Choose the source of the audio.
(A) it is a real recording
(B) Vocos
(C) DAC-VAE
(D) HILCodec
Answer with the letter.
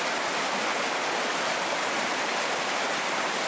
A